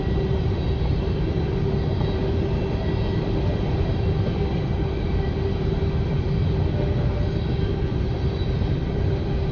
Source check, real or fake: real